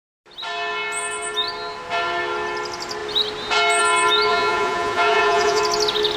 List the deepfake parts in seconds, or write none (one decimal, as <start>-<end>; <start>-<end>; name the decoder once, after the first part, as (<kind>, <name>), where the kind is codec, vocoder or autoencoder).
4.3-5.6 (vocoder, Vocos)